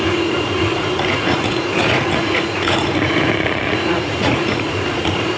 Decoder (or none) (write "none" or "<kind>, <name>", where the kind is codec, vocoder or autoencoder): vocoder, Vocos